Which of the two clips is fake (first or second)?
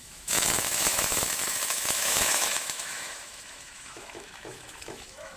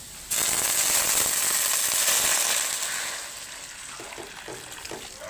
first